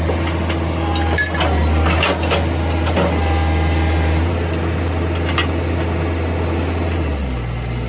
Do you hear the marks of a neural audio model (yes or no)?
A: no